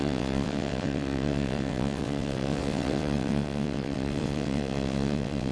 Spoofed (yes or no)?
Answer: yes